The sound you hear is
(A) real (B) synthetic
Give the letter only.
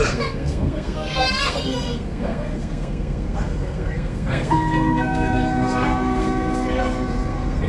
B